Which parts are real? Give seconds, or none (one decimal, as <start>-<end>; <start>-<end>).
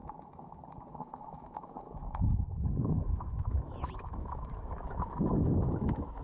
0.0-0.9